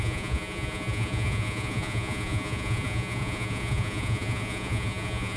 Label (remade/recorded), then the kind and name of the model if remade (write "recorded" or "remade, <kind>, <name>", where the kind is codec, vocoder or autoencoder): remade, vocoder, Vocos